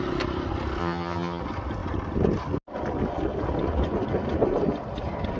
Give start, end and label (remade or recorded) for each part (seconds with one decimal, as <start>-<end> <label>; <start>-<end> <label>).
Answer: 0.0-0.8 recorded; 0.8-1.4 remade; 1.4-5.4 recorded